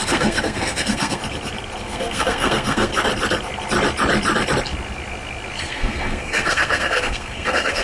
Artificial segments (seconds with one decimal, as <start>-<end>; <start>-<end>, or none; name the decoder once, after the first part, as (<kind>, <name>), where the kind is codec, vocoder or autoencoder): 0.0-1.2 (codec, SNAC); 1.8-2.9; 5.6-7.8